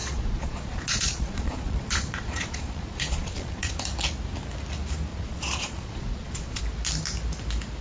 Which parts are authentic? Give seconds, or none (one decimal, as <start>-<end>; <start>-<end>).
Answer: 3.7-5.1; 6.6-7.8